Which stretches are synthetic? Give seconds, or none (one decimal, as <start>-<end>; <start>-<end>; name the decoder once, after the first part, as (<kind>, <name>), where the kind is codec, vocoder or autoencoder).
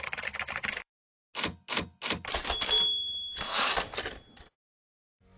none